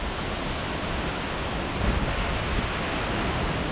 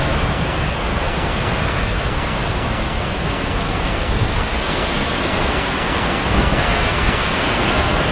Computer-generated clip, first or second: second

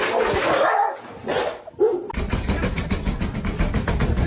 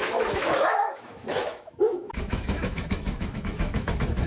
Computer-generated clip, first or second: second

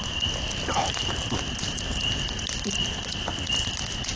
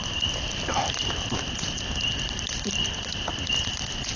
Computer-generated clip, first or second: second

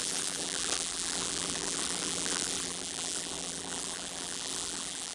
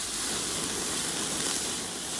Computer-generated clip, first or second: first